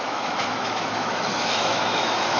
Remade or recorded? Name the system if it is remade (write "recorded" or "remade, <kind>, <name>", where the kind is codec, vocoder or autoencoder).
remade, autoencoder, DAC-VAE